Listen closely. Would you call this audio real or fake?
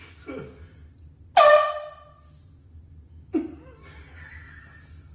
real